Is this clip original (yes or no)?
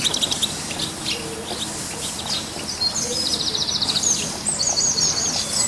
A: yes